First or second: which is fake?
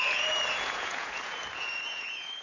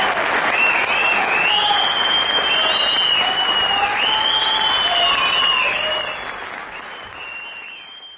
first